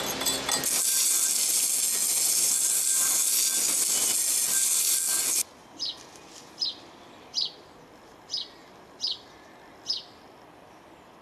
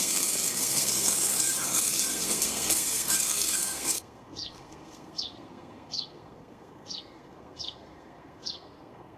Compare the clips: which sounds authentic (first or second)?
first